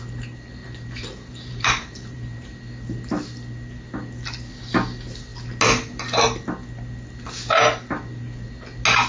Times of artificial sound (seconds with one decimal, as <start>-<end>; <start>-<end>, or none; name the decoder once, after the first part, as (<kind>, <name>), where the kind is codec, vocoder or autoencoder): 0.6-2.6 (vocoder, BigVGAN v2)